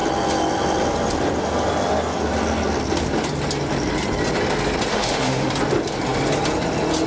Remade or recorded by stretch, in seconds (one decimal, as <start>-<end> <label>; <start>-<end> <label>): 0.0-4.9 recorded; 4.9-5.5 remade; 5.5-7.1 recorded

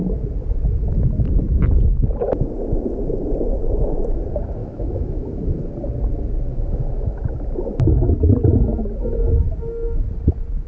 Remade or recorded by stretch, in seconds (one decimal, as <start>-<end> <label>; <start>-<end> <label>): 0.0-4.6 recorded; 4.6-5.6 remade; 5.6-6.5 recorded; 6.5-7.2 remade; 7.2-10.7 recorded

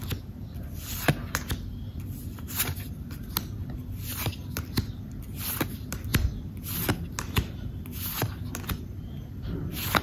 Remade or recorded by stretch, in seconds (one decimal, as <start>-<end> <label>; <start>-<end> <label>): 0.0-10.0 recorded